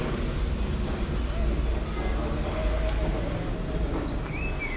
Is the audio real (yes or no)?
yes